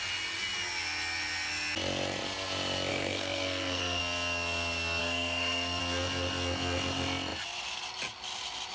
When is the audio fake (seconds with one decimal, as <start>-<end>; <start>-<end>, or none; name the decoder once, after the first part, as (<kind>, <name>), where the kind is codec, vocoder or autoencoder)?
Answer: 2.9-4.0 (codec, SNAC); 5.0-5.8